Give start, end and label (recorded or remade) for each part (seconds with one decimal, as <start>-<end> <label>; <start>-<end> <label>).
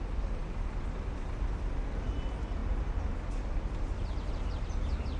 0.0-5.2 recorded